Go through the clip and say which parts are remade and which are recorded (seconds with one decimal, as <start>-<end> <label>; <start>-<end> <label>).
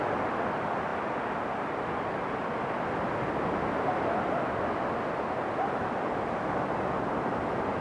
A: 0.0-7.8 recorded